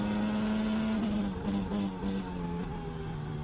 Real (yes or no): yes